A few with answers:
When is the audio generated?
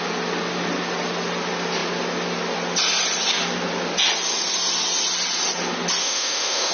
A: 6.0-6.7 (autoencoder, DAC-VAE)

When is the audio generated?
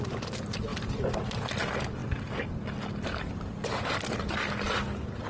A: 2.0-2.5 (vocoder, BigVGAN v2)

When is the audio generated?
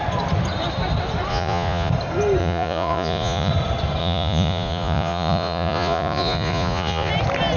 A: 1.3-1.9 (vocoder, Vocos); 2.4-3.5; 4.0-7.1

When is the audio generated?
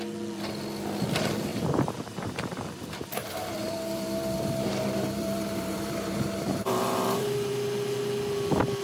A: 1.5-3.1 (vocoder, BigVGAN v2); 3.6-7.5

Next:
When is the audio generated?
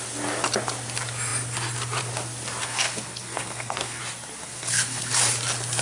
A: 2.6-4.0 (codec, SNAC); 4.4-5.2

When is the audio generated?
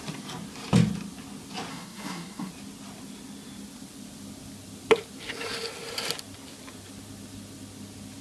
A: 1.7-2.5 (codec, SNAC)